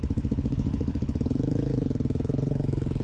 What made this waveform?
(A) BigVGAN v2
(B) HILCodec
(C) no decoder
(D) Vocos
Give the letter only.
B